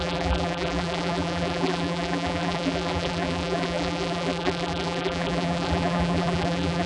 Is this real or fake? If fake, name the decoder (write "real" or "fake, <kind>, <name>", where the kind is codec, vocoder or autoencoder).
fake, vocoder, BigVGAN v2